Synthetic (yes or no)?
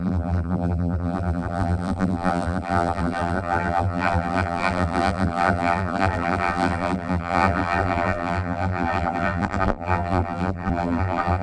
yes